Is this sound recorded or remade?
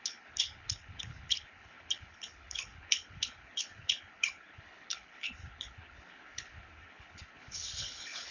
remade